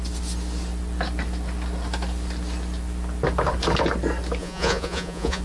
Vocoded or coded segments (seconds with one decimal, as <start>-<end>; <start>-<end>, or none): 4.4-5.4

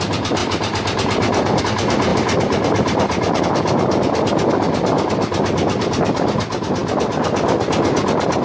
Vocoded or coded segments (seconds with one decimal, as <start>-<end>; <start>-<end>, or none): 0.4-1.6; 2.1-3.4

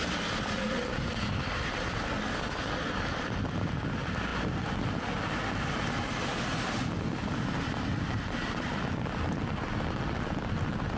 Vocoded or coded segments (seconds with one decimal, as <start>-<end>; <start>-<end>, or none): none

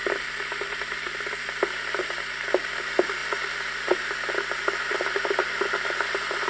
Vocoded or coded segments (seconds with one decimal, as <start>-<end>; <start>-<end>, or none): none